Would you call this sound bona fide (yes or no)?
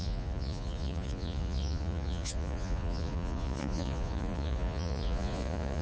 no